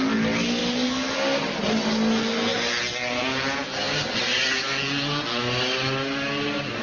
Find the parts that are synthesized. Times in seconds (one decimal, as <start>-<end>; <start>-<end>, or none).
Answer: none

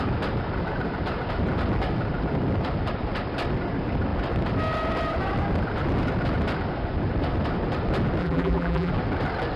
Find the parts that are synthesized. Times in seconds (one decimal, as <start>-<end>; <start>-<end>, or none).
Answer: 8.2-8.9

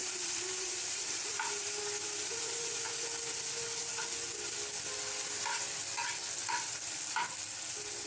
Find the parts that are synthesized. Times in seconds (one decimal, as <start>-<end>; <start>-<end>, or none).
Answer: 0.0-2.9

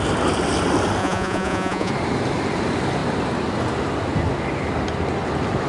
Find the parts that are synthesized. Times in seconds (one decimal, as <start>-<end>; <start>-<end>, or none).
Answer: 1.0-1.9

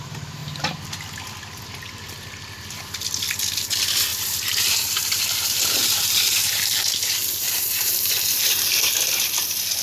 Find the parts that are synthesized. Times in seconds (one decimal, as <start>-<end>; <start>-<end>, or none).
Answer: 4.1-8.7